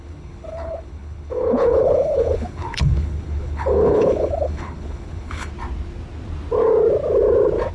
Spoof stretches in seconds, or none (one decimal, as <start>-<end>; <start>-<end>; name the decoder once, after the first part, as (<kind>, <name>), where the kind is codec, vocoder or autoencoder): 0.0-5.5 (codec, HILCodec)